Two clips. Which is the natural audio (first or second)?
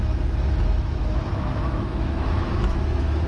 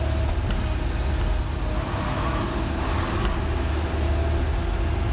second